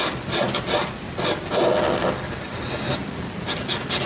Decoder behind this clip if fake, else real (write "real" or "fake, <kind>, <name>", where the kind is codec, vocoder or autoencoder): real